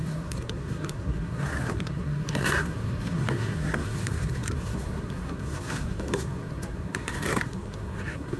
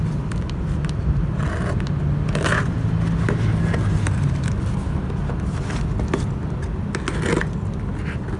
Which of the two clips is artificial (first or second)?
first